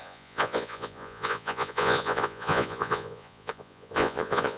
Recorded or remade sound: remade